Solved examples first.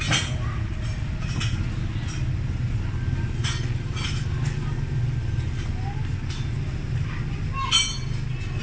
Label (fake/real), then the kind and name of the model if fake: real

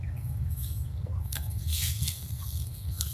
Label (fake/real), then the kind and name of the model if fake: fake, codec, SNAC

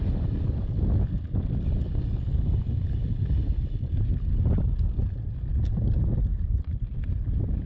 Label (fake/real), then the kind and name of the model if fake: real